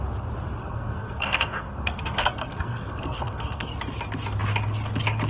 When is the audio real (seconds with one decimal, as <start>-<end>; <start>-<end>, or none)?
0.0-0.6; 3.8-5.3